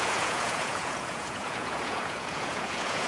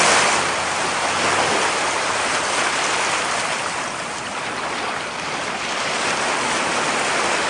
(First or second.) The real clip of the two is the second